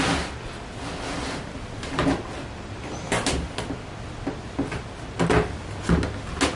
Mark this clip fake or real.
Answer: real